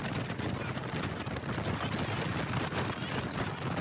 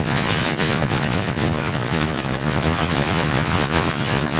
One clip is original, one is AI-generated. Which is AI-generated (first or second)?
second